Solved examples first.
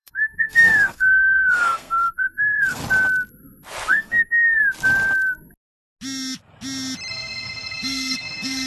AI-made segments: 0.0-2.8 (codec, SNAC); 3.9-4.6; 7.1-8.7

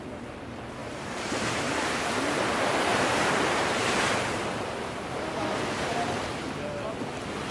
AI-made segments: 0.8-2.1 (vocoder, BigVGAN v2); 2.9-6.3

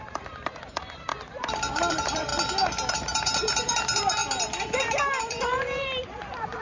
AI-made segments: 0.0-2.3 (vocoder, BigVGAN v2); 2.9-4.2; 5.2-6.6

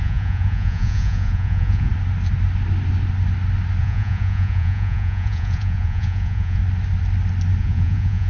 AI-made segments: 0.0-1.9 (vocoder, Vocos); 3.8-6.6; 7.6-8.3

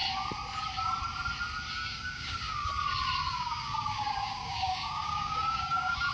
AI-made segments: 1.7-2.7 (codec, DAC); 3.3-6.1

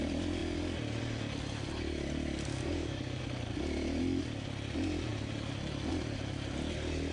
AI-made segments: 2.5-3.2 (codec, DAC)

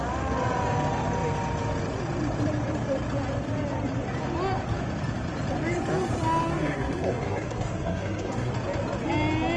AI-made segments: 6.6-8.5 (codec, SNAC)

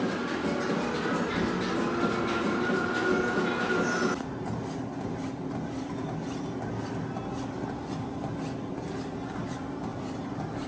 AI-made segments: none